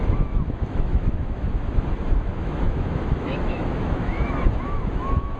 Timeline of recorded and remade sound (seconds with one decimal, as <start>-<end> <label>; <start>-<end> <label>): 0.0-5.4 remade